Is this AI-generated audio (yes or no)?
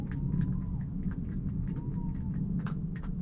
no